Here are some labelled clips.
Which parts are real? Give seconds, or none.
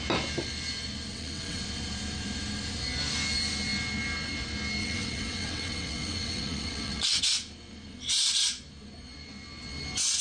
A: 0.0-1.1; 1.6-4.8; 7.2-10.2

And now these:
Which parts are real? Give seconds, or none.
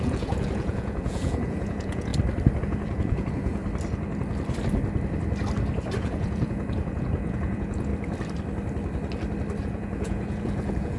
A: 2.1-2.6; 3.6-6.0; 7.9-9.6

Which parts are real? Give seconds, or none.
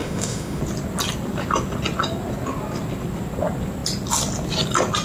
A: 0.6-5.0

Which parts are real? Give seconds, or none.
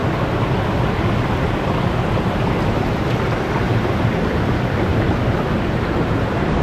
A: 4.9-6.6